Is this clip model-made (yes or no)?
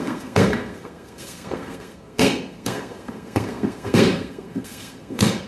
yes